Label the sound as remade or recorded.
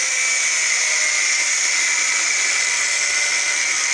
recorded